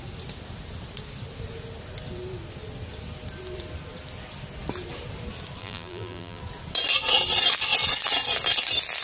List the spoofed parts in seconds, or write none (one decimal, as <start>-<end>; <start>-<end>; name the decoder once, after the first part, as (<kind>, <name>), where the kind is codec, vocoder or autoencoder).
5.6-6.4 (vocoder, BigVGAN v2)